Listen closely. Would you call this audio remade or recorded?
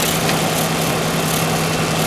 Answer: recorded